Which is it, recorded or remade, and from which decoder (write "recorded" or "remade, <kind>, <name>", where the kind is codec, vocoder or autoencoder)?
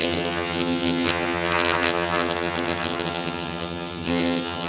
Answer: remade, vocoder, HiFi-GAN